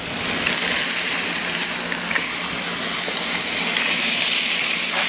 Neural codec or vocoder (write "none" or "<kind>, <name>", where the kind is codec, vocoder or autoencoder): none